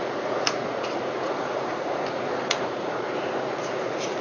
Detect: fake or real fake